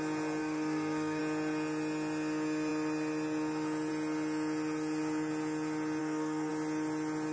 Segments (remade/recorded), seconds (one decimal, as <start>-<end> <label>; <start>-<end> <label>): 0.0-0.4 recorded; 0.4-1.2 remade; 1.2-6.0 recorded; 6.0-6.5 remade; 6.5-7.3 recorded